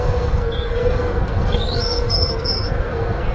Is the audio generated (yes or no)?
yes